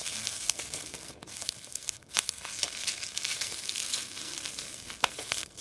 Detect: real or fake fake